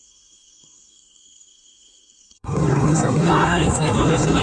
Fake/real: fake